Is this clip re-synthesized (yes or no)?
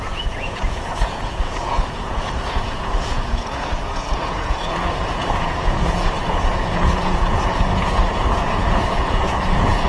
yes